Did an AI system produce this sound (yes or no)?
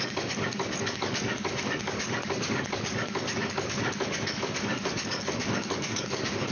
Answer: yes